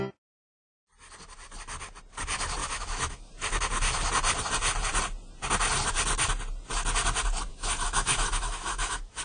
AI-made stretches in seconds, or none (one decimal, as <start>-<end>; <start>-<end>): 2.6-3.3; 7.5-9.2